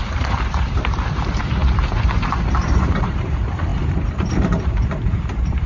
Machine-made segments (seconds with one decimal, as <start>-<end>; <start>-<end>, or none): 0.0-5.7